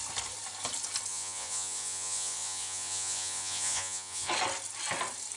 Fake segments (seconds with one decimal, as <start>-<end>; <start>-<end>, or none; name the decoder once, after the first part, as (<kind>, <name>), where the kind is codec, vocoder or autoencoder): 1.1-4.3 (vocoder, Vocos)